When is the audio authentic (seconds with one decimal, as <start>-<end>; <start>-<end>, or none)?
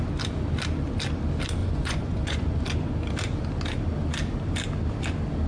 0.0-1.6; 2.5-5.5